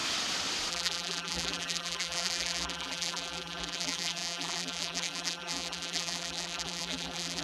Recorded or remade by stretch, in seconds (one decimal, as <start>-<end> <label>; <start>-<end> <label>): 0.0-0.7 recorded; 0.7-7.4 remade